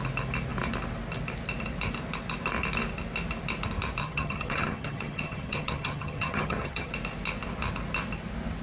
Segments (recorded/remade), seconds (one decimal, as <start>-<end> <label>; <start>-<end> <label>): 0.0-4.0 recorded; 4.0-6.9 remade; 6.9-8.6 recorded